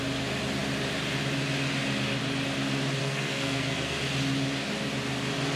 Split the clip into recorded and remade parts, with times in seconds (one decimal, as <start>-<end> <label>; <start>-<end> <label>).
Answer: 0.0-3.0 recorded; 3.0-4.0 remade; 4.0-5.6 recorded